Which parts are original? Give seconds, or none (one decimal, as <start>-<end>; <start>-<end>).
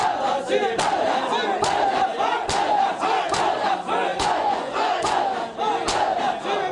0.0-4.1; 5.2-6.7